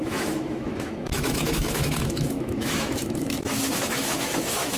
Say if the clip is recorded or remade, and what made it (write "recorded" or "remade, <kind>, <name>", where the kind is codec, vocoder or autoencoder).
remade, autoencoder, DAC-VAE